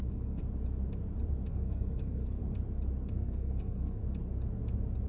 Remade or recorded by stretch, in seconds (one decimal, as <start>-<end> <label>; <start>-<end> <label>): 0.0-0.4 remade; 0.4-1.5 recorded; 1.5-2.4 remade; 2.4-3.1 recorded; 3.1-4.0 remade; 4.0-5.1 recorded